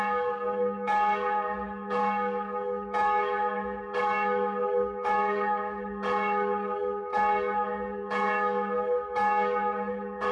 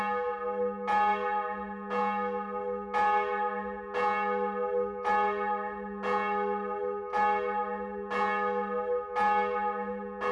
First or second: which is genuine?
second